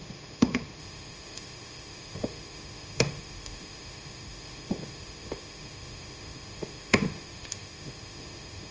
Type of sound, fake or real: fake